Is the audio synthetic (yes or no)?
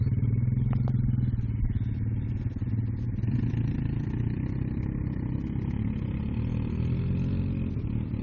no